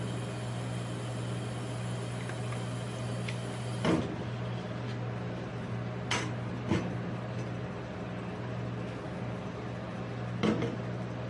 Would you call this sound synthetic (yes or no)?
no